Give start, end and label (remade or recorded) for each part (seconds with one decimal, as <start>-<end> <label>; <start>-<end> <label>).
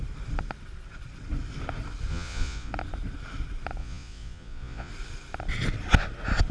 0.0-2.1 recorded; 2.1-2.7 remade; 2.7-3.8 recorded; 3.8-4.9 remade; 4.9-6.5 recorded